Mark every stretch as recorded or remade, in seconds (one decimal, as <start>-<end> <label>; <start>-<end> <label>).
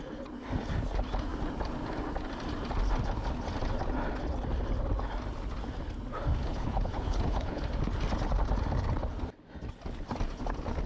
0.0-6.5 recorded; 6.5-7.6 remade; 7.6-10.9 recorded